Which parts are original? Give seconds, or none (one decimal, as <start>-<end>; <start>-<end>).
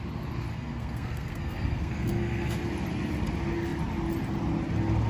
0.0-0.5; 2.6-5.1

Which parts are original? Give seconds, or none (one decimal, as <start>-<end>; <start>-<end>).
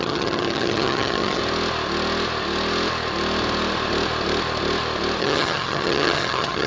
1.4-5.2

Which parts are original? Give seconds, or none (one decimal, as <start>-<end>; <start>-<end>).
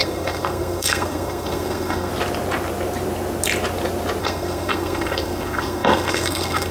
2.1-4.2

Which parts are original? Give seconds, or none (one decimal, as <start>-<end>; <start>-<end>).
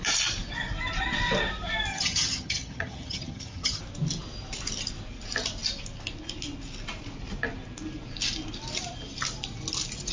0.0-1.9; 3.8-10.1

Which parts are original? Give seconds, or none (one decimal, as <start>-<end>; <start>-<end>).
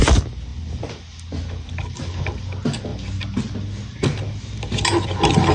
0.0-5.5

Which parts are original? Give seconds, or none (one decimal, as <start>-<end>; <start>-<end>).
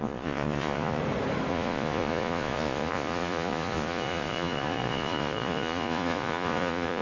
1.0-1.5